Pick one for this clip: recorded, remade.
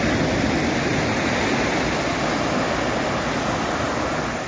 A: recorded